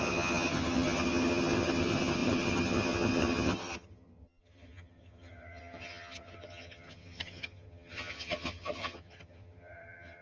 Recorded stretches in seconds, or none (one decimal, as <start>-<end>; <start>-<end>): none